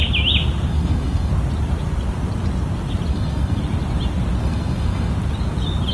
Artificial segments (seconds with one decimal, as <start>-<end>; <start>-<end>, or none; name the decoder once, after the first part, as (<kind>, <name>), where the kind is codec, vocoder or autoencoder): 0.7-1.3 (codec, SNAC); 3.1-3.6; 4.4-5.1